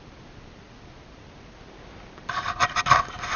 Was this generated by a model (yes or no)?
no